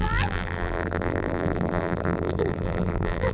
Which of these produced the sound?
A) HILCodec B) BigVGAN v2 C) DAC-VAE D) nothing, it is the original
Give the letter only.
B